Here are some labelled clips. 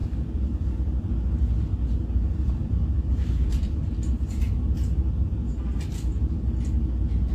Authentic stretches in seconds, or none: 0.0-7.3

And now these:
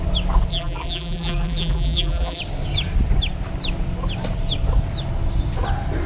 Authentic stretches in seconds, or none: 0.0-0.5; 2.4-6.1